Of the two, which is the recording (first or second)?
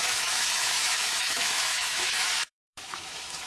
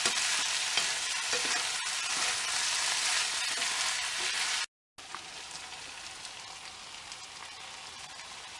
second